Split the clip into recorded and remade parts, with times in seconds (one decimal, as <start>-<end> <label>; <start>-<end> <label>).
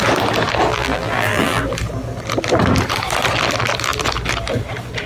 0.0-0.7 recorded; 0.7-1.6 remade; 1.6-5.1 recorded